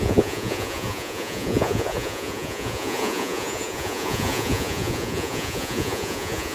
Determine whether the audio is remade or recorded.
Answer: remade